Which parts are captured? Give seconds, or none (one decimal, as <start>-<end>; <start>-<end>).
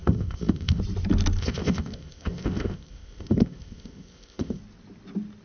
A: 0.8-1.4; 4.6-5.4